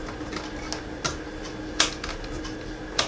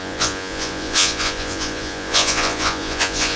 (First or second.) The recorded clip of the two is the first